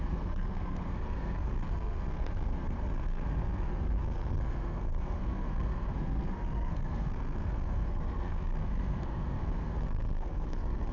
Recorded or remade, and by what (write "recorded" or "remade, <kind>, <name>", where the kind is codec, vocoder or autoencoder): remade, codec, SNAC